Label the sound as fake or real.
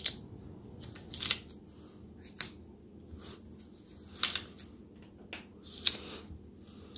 real